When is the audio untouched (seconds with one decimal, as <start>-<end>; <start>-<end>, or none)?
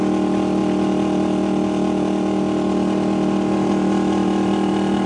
0.0-5.1